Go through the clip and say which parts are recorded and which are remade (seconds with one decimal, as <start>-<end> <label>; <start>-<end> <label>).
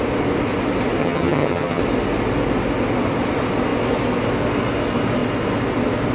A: 0.0-1.0 recorded; 1.0-1.8 remade; 1.8-6.1 recorded